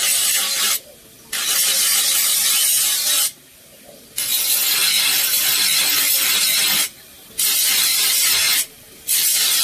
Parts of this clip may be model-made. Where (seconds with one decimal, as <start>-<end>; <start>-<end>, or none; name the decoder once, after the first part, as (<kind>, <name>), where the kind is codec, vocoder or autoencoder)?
0.0-9.6 (vocoder, BigVGAN v2)